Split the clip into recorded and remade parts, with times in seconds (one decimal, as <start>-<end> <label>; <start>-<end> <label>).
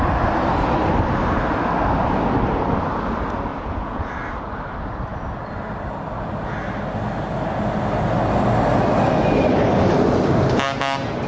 0.0-3.5 recorded; 3.5-4.1 remade; 4.1-11.3 recorded